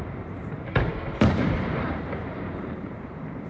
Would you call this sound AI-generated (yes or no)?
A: yes